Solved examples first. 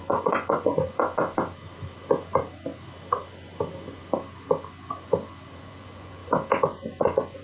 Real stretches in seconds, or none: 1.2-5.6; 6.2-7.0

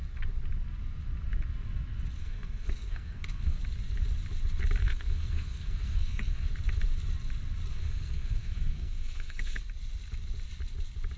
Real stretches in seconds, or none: 0.0-2.2; 3.6-4.8; 6.5-7.7; 9.6-11.2

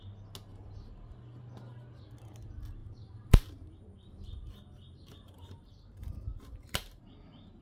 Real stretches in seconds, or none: 0.0-2.8; 7.0-7.6

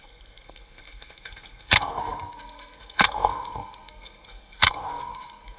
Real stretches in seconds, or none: none

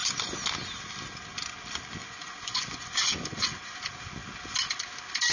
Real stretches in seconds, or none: 0.0-2.0; 3.8-5.3

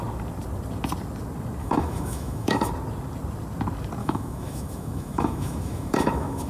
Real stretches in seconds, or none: 0.0-1.6; 2.7-4.0

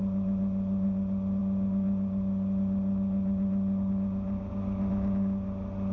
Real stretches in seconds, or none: 0.0-5.9